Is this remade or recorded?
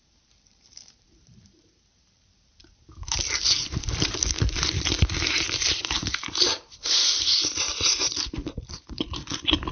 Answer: remade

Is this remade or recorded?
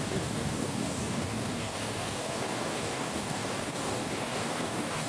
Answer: remade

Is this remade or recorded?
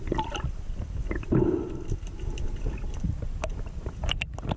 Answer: recorded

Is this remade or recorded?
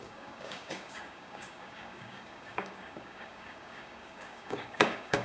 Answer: remade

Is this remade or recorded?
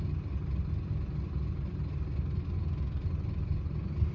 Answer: recorded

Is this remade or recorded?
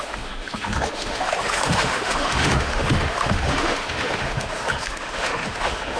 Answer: remade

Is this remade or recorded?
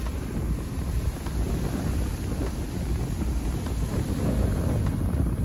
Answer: recorded